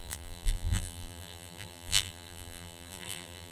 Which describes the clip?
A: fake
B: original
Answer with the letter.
A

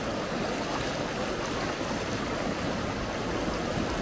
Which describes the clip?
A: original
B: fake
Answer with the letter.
A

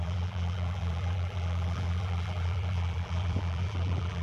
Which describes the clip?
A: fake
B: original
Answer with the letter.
A